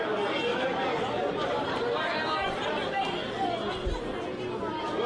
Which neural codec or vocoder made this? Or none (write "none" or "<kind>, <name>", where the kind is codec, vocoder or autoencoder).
none